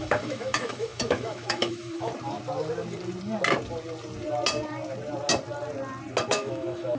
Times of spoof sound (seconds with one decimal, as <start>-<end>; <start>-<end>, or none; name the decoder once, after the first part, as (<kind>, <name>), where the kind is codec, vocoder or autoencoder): 0.0-2.1 (autoencoder, DAC-VAE); 6.3-7.0